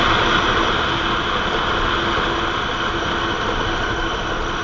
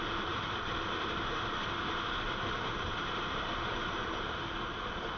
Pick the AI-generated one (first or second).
second